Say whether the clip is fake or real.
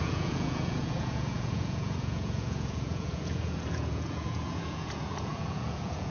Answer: fake